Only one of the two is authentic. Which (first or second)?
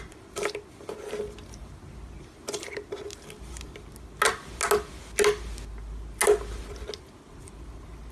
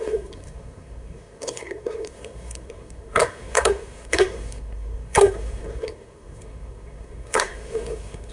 first